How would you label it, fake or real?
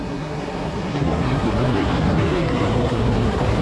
fake